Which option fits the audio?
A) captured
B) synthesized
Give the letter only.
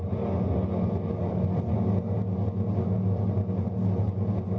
A